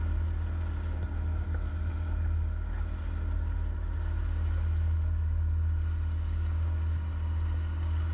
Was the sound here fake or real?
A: real